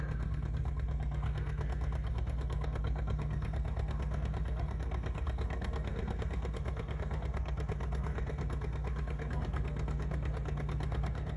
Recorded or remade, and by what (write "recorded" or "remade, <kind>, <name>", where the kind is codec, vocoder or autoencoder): remade, codec, SNAC